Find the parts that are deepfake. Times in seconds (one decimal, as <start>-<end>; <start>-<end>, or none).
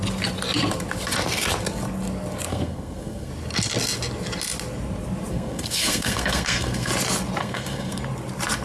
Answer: 2.5-3.3; 5.3-6.9; 7.4-8.0